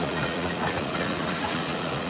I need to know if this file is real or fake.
fake